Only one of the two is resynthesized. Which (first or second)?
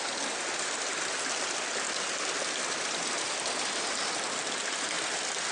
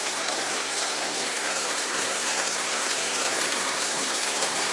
second